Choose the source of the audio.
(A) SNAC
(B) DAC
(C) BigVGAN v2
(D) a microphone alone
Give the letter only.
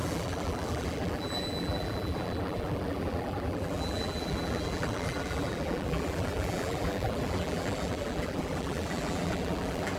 C